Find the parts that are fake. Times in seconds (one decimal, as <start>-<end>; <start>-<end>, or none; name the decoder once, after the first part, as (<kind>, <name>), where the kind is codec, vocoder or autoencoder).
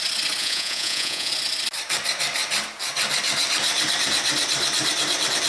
0.4-1.3 (vocoder, Vocos)